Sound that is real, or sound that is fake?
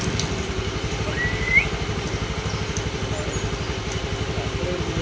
real